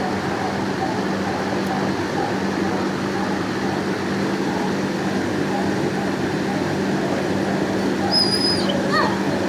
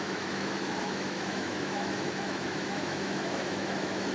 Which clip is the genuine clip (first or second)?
first